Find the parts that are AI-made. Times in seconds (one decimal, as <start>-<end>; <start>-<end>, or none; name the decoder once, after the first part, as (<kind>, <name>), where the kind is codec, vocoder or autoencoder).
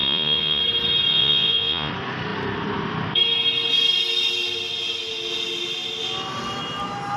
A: 0.0-0.6 (vocoder, Vocos); 1.1-1.9